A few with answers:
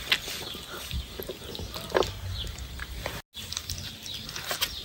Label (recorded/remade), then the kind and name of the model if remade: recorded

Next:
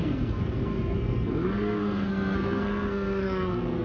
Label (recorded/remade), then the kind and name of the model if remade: remade, codec, SNAC